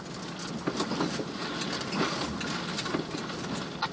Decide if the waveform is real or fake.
real